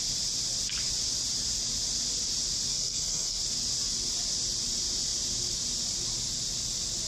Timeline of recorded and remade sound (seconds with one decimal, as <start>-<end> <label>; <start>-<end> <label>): 0.0-2.7 recorded; 2.7-3.4 remade; 3.4-7.1 recorded